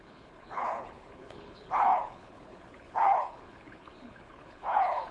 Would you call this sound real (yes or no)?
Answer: no